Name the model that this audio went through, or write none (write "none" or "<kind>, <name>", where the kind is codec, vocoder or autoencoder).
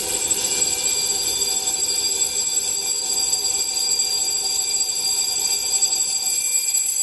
vocoder, BigVGAN v2